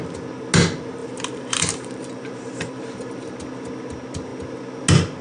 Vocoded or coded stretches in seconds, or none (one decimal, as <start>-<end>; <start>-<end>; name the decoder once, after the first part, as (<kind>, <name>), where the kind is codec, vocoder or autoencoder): 1.0-3.4 (vocoder, BigVGAN v2)